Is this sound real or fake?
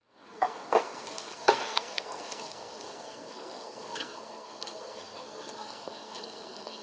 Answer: fake